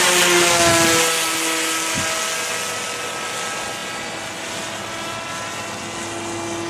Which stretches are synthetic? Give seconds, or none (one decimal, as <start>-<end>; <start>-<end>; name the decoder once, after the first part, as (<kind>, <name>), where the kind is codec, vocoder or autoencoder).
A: none

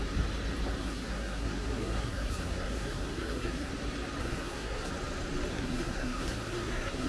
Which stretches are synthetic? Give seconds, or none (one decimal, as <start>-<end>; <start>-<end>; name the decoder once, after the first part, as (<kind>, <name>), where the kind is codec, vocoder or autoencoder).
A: 0.8-3.7 (codec, SNAC); 4.2-4.9; 5.5-7.1

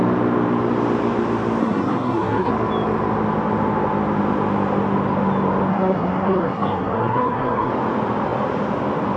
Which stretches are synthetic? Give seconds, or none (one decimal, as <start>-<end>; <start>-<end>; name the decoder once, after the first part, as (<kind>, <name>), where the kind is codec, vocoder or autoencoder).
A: 1.6-2.5 (codec, SNAC); 5.7-7.7

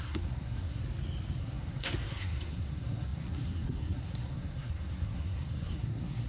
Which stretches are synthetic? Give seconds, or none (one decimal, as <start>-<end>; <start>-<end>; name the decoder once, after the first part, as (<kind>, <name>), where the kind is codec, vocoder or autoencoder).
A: 0.0-0.8 (codec, SNAC); 1.4-6.3